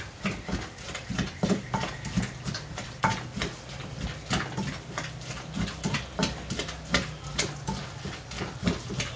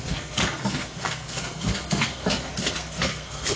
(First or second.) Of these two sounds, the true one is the first